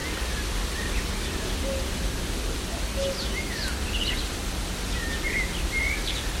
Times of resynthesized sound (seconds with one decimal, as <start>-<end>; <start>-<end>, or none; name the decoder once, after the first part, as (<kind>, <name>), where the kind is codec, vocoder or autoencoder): none